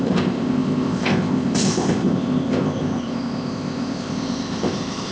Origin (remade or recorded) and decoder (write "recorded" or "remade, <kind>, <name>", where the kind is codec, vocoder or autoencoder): remade, codec, ZipCodec